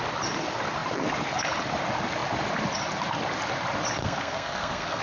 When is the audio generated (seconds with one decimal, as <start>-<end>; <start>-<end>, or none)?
4.0-5.0